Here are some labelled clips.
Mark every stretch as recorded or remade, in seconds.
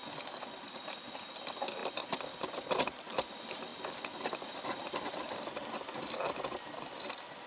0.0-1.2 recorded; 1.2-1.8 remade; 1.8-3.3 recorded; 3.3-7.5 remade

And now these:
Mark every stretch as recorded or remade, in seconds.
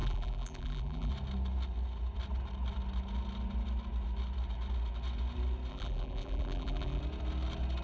0.0-1.1 remade; 1.1-5.7 recorded; 5.7-7.0 remade; 7.0-7.8 recorded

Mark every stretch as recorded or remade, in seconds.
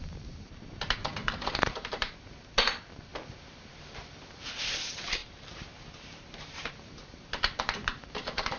0.0-1.0 remade; 1.0-1.5 recorded; 1.5-3.1 remade; 3.1-4.6 recorded; 4.6-8.6 remade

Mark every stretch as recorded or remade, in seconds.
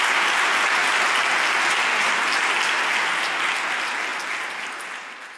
0.0-5.4 recorded